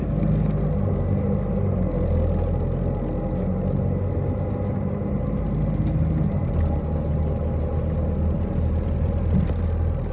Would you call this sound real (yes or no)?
yes